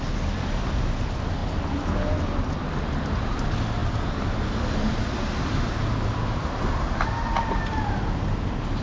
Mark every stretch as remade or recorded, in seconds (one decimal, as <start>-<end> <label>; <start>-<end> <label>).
0.0-8.8 recorded